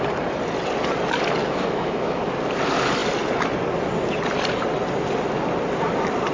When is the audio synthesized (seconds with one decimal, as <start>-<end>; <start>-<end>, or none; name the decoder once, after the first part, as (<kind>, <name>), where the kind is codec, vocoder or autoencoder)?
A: 1.4-2.2 (autoencoder, DAC-VAE)